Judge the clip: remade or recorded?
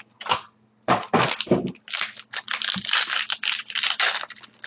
recorded